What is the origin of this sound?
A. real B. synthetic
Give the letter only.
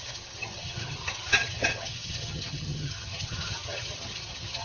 B